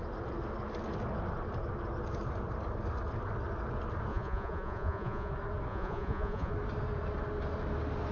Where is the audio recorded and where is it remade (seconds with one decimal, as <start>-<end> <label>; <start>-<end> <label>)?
0.0-4.1 recorded; 4.1-5.3 remade; 5.3-5.7 recorded; 5.7-6.5 remade; 6.5-8.1 recorded